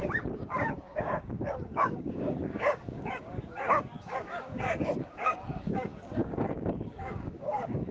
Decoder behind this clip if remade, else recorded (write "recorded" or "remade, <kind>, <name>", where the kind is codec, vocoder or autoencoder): remade, codec, DAC